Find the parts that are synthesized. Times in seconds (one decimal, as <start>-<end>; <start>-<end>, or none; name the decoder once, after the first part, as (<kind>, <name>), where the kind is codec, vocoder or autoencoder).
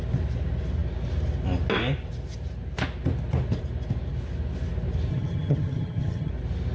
5.1-6.3 (vocoder, HiFi-GAN)